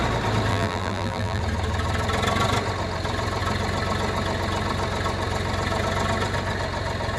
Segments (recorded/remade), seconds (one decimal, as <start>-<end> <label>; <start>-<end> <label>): 0.0-0.5 recorded; 0.5-1.4 remade; 1.4-7.2 recorded